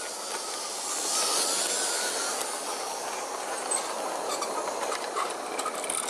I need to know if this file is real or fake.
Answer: real